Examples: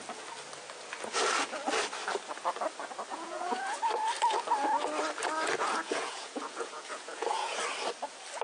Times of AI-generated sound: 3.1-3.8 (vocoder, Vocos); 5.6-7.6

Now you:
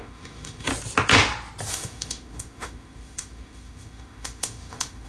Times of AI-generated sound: 0.0-0.7 (autoencoder, DAC-VAE); 1.7-5.1

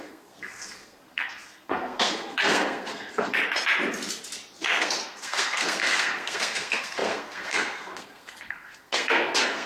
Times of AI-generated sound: 0.0-3.4 (codec, SNAC); 4.6-9.7

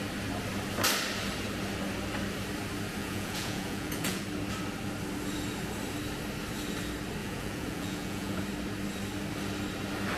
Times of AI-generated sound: 3.0-4.2 (vocoder, Vocos); 7.2-8.4